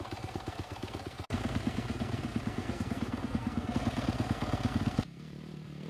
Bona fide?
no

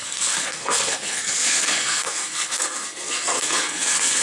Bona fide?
no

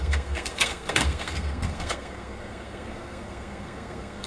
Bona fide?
no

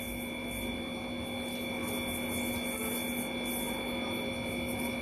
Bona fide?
yes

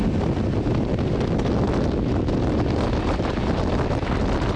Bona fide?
yes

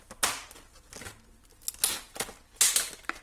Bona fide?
yes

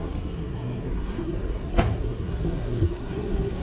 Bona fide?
no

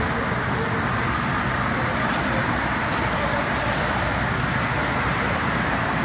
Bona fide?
yes